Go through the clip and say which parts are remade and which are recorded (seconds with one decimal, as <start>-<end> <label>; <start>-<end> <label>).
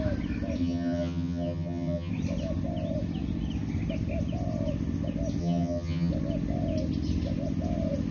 0.0-0.6 recorded; 0.6-2.1 remade; 2.1-5.4 recorded; 5.4-6.1 remade; 6.1-8.1 recorded